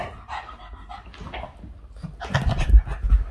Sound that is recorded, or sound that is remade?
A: recorded